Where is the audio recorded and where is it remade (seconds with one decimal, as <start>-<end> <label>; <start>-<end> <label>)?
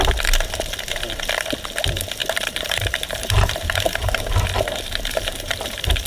0.0-2.2 recorded; 2.2-6.1 remade